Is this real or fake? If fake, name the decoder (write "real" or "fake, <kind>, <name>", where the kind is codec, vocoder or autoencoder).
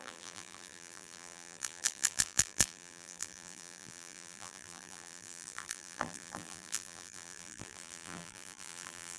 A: fake, vocoder, BigVGAN v2